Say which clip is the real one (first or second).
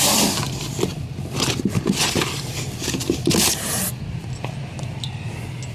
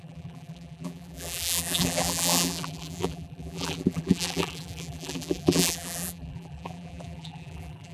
first